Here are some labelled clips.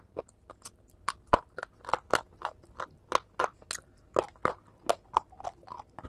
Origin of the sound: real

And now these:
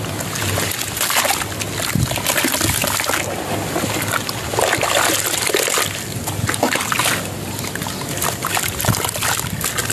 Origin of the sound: real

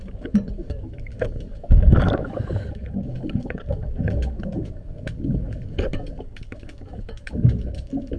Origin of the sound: fake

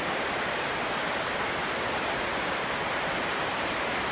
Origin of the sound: real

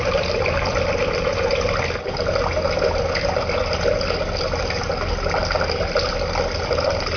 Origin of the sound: real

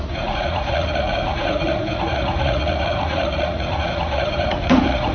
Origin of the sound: fake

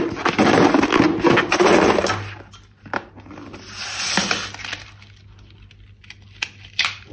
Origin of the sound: real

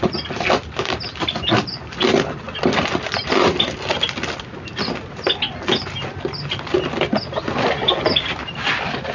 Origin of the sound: real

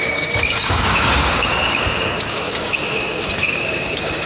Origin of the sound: fake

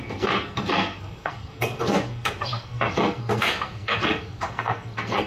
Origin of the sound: fake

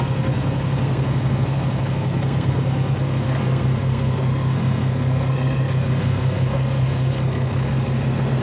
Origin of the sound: fake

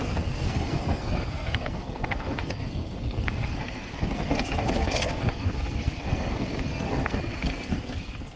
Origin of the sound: fake